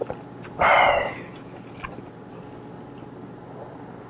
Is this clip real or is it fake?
real